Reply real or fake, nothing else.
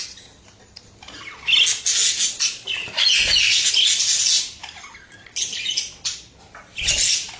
real